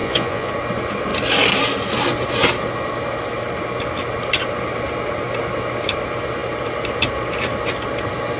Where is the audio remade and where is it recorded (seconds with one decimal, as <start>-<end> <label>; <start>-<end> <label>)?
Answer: 0.0-0.5 remade; 0.5-8.4 recorded